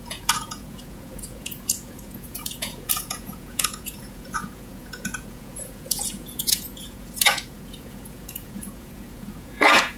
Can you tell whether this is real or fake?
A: fake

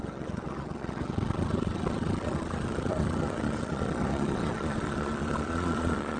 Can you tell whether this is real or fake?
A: fake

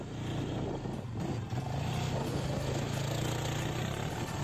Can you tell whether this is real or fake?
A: real